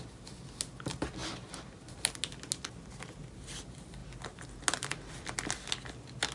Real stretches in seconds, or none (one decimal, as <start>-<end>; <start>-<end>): 0.0-6.3